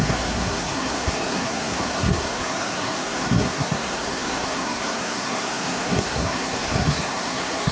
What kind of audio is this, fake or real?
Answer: fake